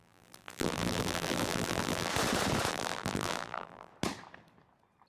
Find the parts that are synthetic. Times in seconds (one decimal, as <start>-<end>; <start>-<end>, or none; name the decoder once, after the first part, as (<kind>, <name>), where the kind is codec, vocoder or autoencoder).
0.0-2.1 (vocoder, BigVGAN v2); 2.7-3.9